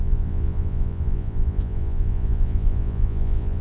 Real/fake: fake